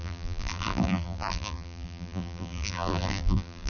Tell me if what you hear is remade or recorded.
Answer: remade